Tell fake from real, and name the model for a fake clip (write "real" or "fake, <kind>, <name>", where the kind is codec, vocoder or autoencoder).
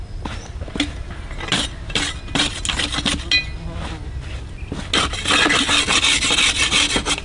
real